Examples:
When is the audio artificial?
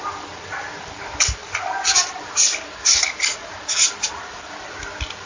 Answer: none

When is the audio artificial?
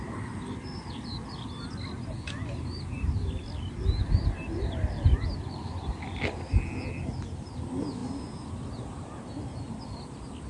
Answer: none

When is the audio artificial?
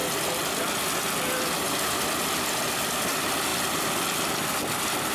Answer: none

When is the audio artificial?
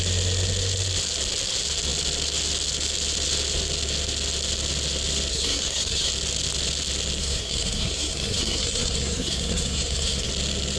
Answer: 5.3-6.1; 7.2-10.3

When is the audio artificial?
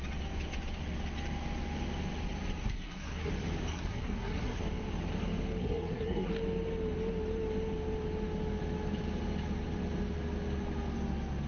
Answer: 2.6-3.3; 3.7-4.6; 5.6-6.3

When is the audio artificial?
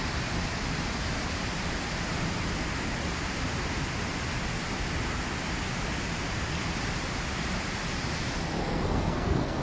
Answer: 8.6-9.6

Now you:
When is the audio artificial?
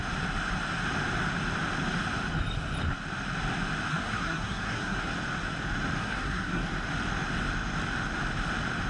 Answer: 3.9-5.1; 6.0-6.6